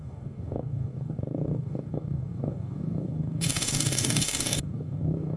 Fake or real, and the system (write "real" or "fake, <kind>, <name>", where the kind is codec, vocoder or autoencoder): fake, codec, DAC